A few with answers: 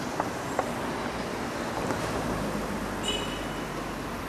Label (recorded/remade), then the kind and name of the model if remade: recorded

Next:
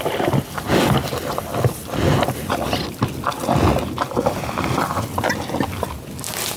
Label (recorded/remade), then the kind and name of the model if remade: recorded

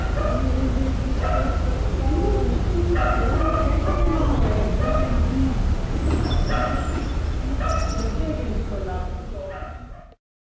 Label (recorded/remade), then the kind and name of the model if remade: recorded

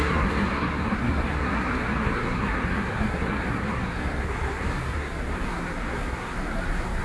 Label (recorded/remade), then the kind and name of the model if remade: remade, codec, SNAC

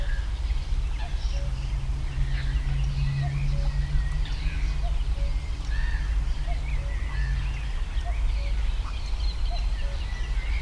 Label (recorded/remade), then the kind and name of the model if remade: recorded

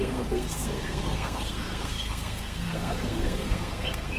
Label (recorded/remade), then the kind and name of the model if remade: remade, codec, SNAC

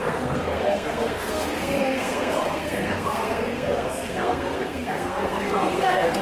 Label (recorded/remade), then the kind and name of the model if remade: remade, codec, SNAC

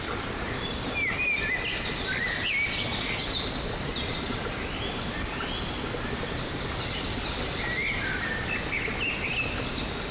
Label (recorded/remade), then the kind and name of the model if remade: recorded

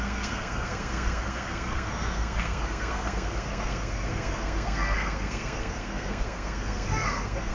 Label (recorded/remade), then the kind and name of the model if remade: remade, codec, SNAC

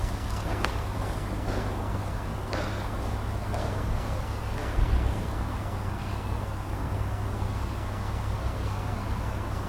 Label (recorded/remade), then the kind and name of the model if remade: remade, codec, SNAC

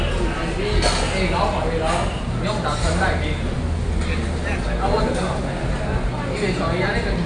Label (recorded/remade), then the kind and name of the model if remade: recorded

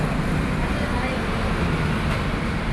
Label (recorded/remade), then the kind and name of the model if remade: recorded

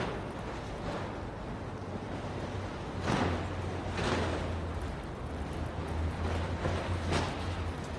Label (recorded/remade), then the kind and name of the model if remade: recorded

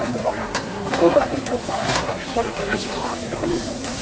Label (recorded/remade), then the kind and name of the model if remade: remade, codec, SNAC